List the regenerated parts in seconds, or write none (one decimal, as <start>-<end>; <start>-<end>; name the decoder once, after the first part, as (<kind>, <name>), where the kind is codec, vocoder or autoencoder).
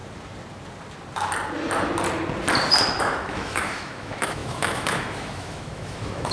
3.0-6.3 (autoencoder, DAC-VAE)